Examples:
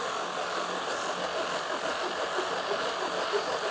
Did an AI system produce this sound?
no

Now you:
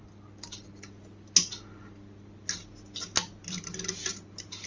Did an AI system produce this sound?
no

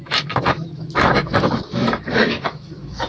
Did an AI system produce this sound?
yes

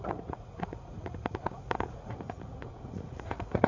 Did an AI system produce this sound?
yes